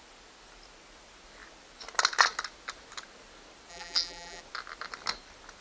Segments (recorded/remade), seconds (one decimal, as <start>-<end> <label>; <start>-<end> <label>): 0.0-3.7 recorded; 3.7-4.4 remade; 4.4-5.6 recorded